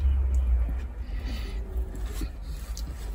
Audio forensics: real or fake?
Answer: real